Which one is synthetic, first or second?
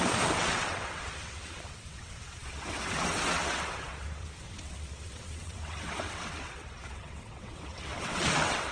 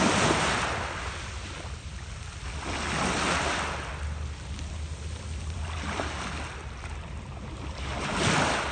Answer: first